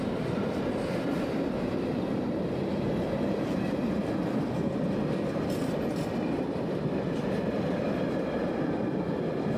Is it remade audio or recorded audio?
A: remade